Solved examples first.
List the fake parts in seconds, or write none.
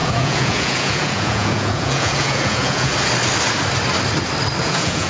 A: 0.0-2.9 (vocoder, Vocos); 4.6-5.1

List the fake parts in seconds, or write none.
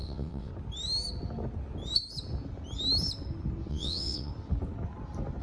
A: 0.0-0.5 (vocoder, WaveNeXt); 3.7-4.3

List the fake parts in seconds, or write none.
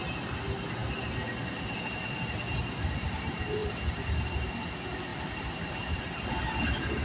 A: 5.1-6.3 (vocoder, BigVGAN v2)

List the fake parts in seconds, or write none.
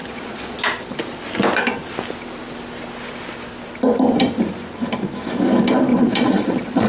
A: 0.0-0.6 (vocoder, Vocos); 5.9-6.9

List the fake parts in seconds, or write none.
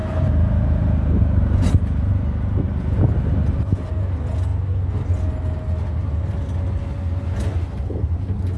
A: none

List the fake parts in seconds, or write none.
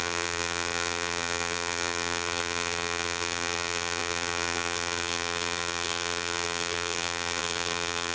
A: 0.0-8.1 (vocoder, BigVGAN v2)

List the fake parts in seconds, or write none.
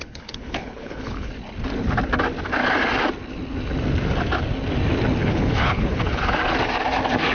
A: 0.0-1.3 (codec, HILCodec); 5.2-6.2